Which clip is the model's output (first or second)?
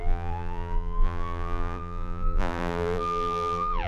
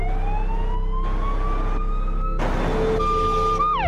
first